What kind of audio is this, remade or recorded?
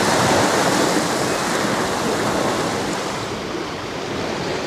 recorded